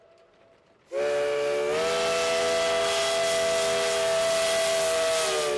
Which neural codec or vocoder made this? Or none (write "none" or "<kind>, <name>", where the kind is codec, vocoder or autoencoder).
none